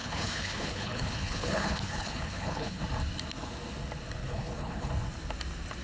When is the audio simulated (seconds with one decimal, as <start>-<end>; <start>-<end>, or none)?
0.0-2.8; 4.2-4.9